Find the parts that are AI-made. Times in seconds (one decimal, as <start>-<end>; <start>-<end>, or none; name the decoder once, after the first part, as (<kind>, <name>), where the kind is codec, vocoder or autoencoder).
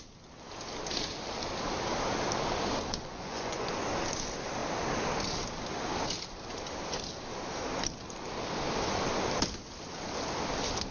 3.1-3.7 (vocoder, Vocos)